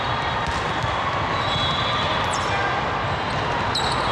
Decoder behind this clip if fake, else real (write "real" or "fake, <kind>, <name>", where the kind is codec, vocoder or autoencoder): real